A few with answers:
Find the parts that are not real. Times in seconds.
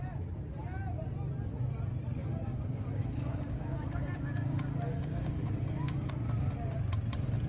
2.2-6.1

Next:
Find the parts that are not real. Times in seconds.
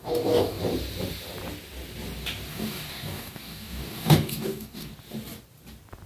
0.0-0.6; 2.5-4.9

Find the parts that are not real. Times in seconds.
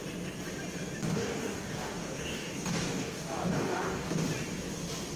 1.1-4.2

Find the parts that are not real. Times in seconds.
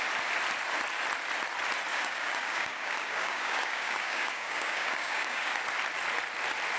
1.9-5.5